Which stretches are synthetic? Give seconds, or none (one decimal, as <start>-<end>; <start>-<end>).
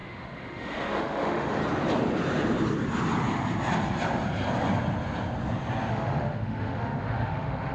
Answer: 0.0-1.6; 5.9-7.7